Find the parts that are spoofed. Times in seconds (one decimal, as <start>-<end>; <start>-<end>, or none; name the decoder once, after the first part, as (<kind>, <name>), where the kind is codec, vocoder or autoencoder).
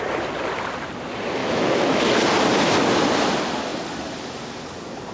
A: 1.4-2.0 (autoencoder, DAC-VAE)